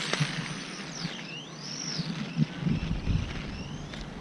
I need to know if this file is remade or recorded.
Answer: recorded